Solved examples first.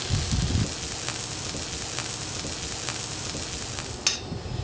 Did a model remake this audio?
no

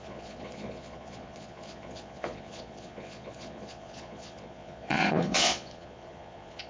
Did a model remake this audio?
yes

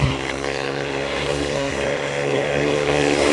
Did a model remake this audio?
yes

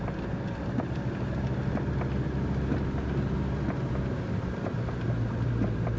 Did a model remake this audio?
no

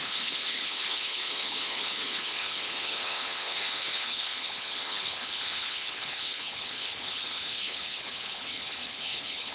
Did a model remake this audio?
yes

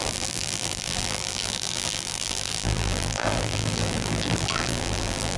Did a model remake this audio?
yes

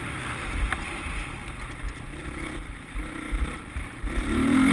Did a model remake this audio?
no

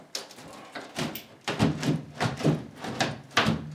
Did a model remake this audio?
no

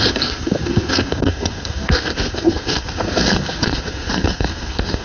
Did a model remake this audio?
yes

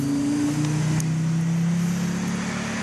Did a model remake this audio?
no